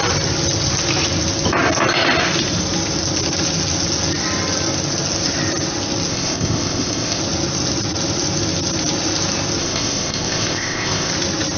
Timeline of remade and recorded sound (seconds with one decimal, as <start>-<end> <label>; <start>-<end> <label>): 0.0-6.1 recorded; 6.1-7.2 remade; 7.2-9.6 recorded; 9.6-11.1 remade; 11.1-11.6 recorded